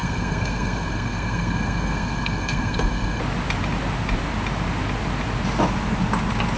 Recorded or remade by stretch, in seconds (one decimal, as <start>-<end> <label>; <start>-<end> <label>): 0.0-3.2 remade; 3.2-6.6 recorded